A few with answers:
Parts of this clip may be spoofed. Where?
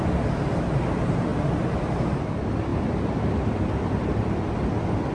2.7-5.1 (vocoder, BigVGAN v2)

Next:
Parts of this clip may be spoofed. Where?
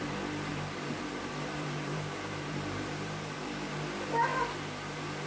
0.5-3.7 (vocoder, BigVGAN v2)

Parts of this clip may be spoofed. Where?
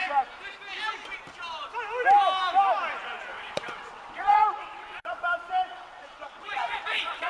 3.3-5.2 (vocoder, WaveNeXt); 5.7-7.3